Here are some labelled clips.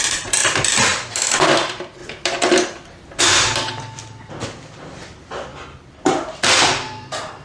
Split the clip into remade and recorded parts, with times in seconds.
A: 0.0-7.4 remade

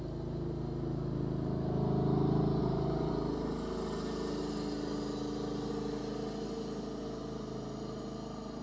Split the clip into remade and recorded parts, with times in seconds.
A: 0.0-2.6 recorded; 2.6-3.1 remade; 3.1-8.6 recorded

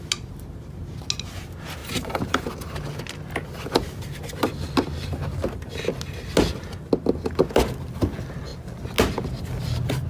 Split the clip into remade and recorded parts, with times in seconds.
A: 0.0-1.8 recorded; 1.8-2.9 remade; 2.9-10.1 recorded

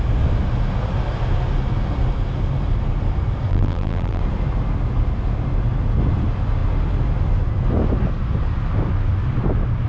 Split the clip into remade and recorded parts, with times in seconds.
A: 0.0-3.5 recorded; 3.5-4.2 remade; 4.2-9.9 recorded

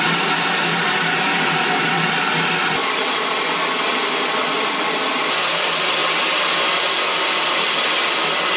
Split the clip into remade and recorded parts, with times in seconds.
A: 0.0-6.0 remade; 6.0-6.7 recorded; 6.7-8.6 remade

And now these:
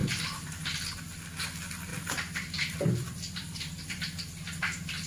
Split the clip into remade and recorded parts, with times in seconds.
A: 0.0-1.9 recorded; 1.9-5.1 remade